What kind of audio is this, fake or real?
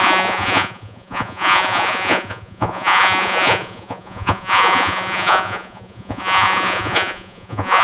fake